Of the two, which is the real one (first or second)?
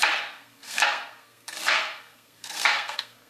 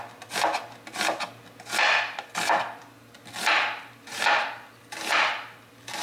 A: second